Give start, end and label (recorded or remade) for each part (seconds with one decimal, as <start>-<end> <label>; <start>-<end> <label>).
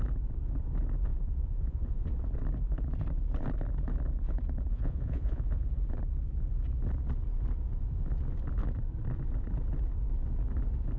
0.0-1.1 recorded; 1.1-2.0 remade; 2.0-4.7 recorded; 4.7-5.7 remade; 5.7-11.0 recorded